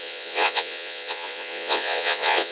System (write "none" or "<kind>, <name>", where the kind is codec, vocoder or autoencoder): vocoder, Vocos